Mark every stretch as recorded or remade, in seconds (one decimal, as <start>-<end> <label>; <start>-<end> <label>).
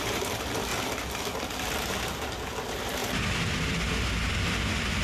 0.0-0.7 remade; 0.7-2.0 recorded; 2.0-3.0 remade; 3.0-3.9 recorded; 3.9-5.0 remade